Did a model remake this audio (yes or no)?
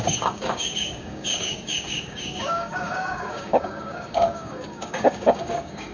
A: yes